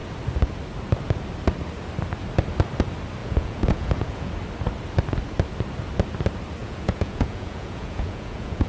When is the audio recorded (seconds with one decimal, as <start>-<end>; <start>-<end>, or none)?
0.0-3.2; 4.3-6.6